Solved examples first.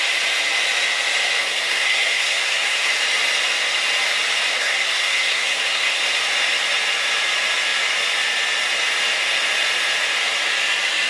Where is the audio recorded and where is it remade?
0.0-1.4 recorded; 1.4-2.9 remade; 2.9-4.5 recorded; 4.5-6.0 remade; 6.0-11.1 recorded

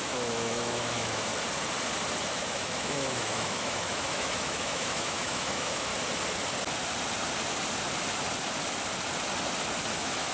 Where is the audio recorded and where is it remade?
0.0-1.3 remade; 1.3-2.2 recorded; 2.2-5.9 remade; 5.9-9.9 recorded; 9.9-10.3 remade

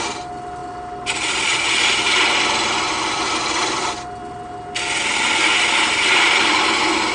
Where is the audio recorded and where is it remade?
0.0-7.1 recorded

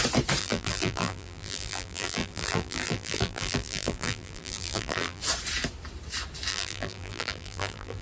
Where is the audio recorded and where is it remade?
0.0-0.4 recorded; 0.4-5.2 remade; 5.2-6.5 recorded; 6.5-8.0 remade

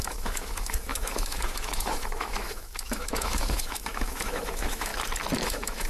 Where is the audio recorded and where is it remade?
0.0-4.9 remade; 4.9-5.4 recorded; 5.4-5.9 remade